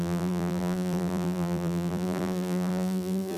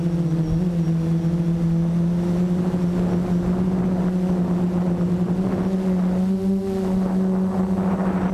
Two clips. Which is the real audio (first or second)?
second